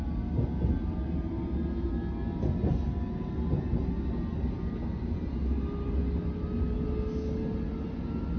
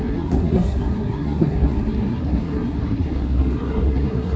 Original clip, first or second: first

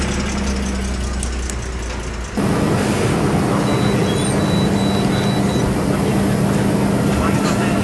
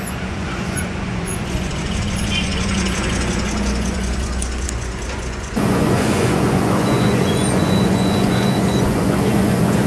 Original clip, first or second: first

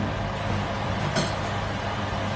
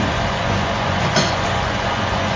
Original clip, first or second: first